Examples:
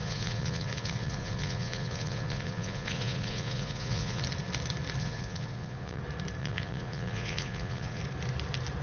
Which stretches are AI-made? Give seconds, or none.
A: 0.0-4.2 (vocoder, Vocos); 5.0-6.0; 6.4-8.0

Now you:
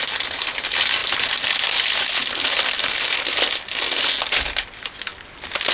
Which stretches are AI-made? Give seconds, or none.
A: none

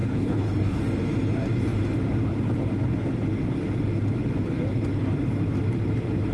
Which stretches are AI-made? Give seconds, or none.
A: 0.0-0.8 (codec, HILCodec)

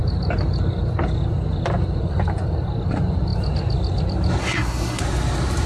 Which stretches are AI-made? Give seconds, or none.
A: 4.4-5.0 (codec, SNAC)